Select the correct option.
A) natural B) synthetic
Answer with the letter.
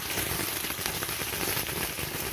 A